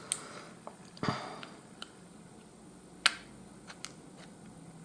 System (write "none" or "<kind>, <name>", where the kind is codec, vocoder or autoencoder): none